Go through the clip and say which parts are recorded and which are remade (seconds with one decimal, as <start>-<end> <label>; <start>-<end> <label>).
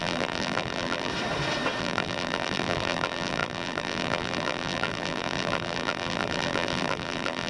0.0-1.1 remade; 1.1-1.8 recorded; 1.8-7.5 remade